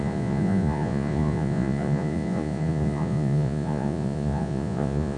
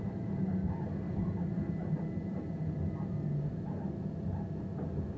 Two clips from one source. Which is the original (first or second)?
second